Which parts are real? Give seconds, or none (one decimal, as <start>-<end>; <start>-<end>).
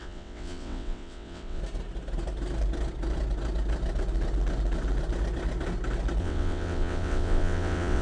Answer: 1.6-6.2